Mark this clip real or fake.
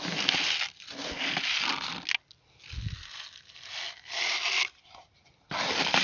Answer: real